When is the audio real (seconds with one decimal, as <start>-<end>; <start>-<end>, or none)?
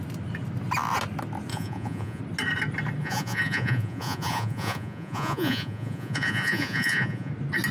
0.0-1.5; 2.2-3.0; 7.3-7.7